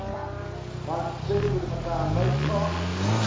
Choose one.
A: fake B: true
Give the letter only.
B